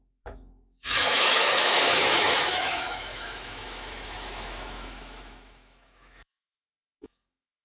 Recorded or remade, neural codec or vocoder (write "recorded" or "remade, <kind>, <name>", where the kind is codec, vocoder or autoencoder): remade, autoencoder, DAC-VAE